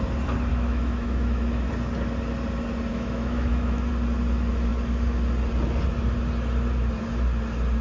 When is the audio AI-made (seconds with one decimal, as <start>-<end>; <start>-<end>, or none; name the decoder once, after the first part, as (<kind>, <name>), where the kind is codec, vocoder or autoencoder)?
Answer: 0.5-1.7 (autoencoder, DAC-VAE); 2.9-3.9